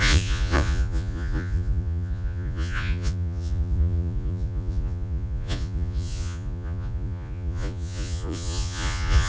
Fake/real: fake